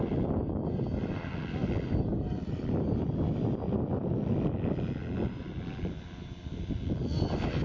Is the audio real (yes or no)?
yes